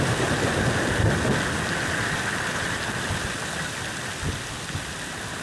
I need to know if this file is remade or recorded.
recorded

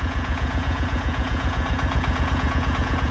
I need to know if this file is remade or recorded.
remade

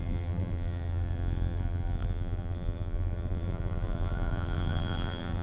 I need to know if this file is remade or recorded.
remade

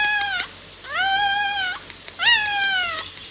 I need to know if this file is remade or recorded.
recorded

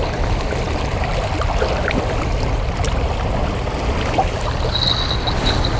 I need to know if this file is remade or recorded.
recorded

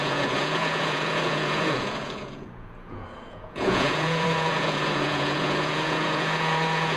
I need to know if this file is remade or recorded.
remade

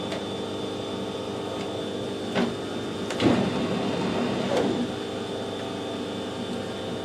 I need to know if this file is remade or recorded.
recorded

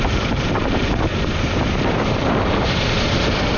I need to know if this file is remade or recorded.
remade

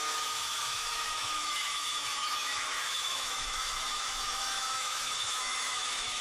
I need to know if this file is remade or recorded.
remade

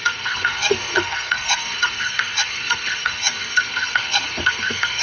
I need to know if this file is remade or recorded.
remade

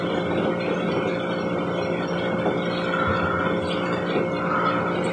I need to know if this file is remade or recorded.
recorded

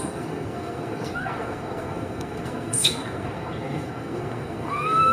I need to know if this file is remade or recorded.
remade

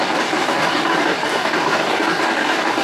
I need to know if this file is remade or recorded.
remade